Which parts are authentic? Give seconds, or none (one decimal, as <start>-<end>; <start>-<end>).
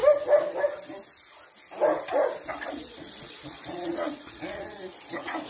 0.0-2.5